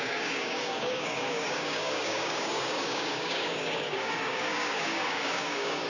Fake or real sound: fake